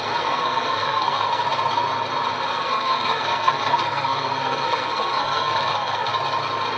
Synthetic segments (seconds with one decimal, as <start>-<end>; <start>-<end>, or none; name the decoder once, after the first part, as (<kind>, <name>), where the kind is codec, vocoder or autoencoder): 0.0-1.4 (codec, SNAC); 2.5-6.1